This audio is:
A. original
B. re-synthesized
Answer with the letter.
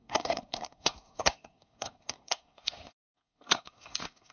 B